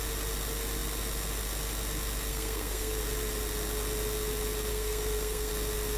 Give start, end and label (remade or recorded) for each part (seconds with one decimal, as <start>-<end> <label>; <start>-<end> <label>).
0.0-2.3 recorded; 2.3-3.0 remade; 3.0-4.7 recorded; 4.7-5.5 remade; 5.5-6.0 recorded